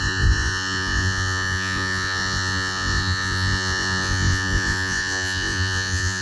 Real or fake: fake